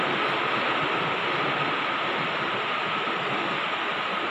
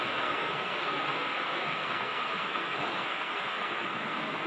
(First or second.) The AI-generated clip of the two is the second